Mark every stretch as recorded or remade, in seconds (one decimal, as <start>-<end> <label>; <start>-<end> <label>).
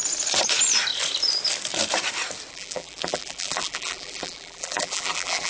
0.0-2.5 recorded; 2.5-5.5 remade